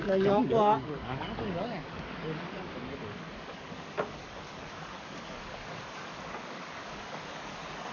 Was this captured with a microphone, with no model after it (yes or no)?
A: no